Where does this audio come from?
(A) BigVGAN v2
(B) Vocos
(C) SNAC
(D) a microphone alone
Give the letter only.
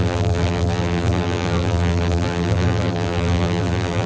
A